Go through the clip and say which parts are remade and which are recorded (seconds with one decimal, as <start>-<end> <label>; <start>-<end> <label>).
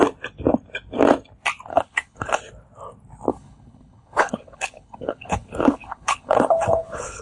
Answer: 0.0-1.7 recorded; 1.7-2.4 remade; 2.4-3.3 recorded; 3.3-7.2 remade